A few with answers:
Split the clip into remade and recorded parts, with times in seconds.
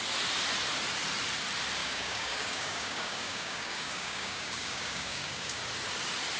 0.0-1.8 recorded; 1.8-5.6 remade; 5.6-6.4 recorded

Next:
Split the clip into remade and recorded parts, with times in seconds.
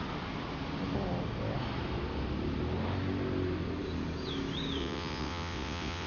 0.0-4.8 recorded; 4.8-6.1 remade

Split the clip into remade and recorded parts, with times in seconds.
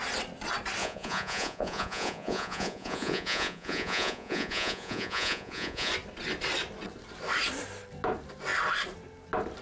0.0-0.8 recorded; 0.8-5.9 remade; 5.9-9.6 recorded